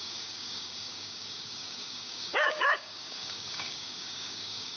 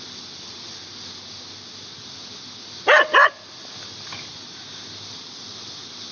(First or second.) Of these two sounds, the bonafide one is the second